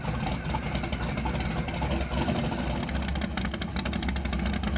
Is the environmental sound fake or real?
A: real